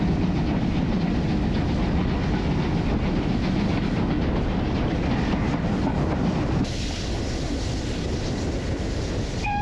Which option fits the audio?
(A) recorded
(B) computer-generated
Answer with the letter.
A